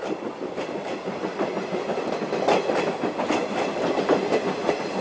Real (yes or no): yes